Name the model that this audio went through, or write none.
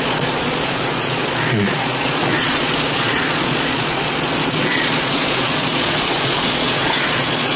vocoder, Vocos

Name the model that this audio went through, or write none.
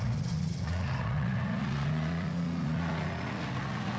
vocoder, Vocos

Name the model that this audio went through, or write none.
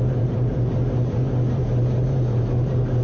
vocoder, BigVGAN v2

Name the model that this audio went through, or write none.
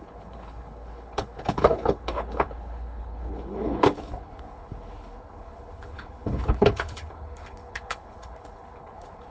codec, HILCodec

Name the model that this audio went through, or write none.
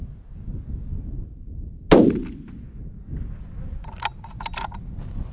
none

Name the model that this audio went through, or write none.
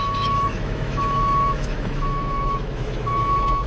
autoencoder, DAC-VAE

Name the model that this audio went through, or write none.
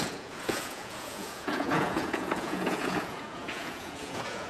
vocoder, Vocos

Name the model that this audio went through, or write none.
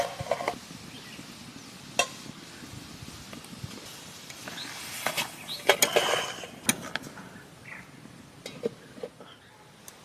none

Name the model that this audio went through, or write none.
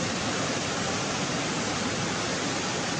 none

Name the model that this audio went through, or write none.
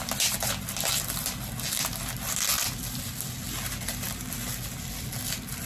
none